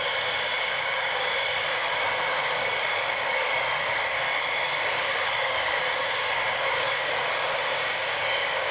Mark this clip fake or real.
fake